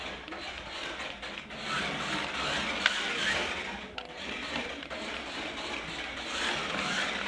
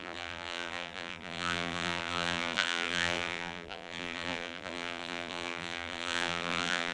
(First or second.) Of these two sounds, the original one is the first